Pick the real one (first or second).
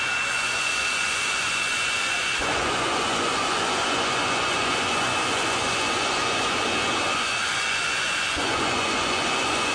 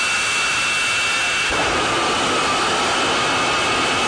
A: second